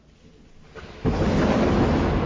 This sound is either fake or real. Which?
real